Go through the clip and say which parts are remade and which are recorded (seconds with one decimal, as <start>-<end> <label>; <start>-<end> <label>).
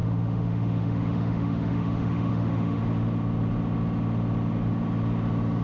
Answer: 0.0-2.8 remade; 2.8-5.6 recorded